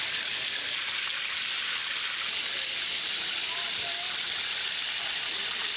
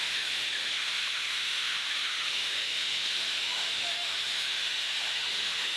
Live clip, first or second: first